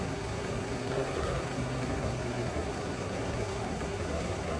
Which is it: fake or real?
fake